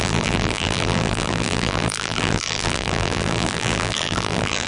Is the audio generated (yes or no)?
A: yes